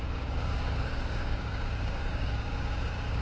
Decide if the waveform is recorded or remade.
remade